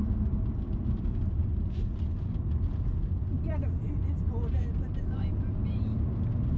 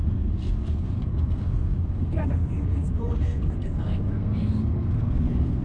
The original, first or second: first